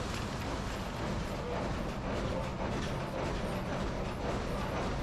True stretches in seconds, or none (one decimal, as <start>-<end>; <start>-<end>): 0.0-5.0